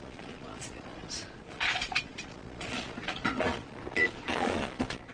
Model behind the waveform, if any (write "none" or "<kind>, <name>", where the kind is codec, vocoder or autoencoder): vocoder, Vocos